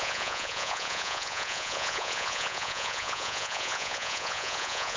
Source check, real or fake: fake